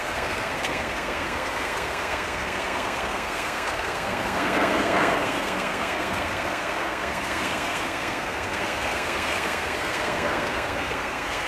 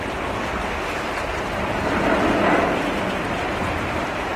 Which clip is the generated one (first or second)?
first